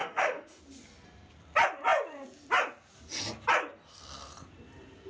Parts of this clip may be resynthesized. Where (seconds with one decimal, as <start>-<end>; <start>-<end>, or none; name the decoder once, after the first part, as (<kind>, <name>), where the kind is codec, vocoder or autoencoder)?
0.0-0.6 (autoencoder, DAC-VAE)

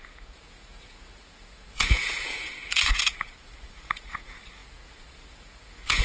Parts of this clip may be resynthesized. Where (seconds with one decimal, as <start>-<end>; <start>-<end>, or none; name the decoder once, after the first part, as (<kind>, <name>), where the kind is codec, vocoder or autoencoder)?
0.0-6.0 (vocoder, Vocos)

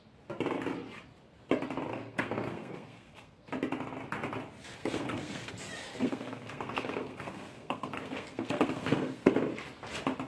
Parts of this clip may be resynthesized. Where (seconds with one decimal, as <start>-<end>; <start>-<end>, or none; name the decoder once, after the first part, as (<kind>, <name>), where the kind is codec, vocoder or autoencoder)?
1.9-3.5 (codec, SNAC); 4.8-5.5; 5.9-9.3

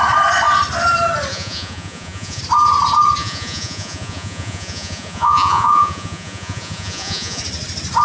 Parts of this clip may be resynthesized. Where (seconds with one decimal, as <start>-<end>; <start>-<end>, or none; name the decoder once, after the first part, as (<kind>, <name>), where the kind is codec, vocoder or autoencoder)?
1.3-2.4 (vocoder, Vocos); 3.2-7.4

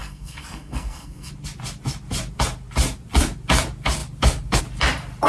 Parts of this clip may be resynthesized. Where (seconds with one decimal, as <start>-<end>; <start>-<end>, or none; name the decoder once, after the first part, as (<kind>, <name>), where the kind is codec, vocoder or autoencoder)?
0.0-1.3 (codec, SNAC)

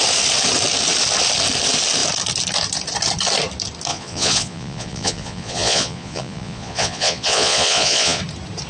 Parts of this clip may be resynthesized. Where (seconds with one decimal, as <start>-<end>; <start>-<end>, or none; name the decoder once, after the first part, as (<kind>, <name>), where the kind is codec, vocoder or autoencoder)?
3.9-8.2 (vocoder, Vocos)

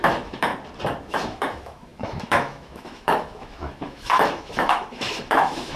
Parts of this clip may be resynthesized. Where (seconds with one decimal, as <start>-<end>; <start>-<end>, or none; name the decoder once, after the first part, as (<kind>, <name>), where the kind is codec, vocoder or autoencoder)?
0.0-0.5 (autoencoder, DAC-VAE); 1.0-5.8